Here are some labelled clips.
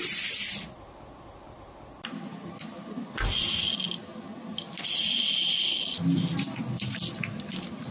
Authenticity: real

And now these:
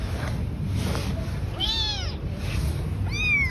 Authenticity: real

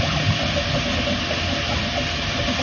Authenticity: real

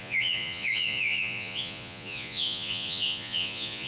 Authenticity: fake